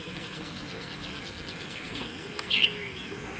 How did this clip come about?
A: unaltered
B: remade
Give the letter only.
B